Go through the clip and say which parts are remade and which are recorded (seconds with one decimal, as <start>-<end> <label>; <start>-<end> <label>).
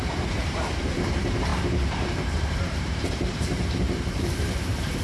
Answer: 0.0-5.0 remade